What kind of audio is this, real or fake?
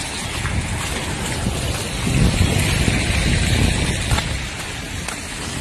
real